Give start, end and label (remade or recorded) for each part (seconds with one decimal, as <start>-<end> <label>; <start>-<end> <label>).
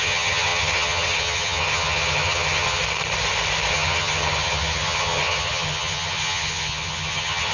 0.0-2.8 remade; 2.8-3.7 recorded; 3.7-7.5 remade